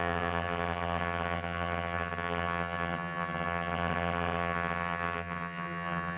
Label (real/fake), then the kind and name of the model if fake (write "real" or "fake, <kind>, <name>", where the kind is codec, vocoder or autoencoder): fake, vocoder, HiFi-GAN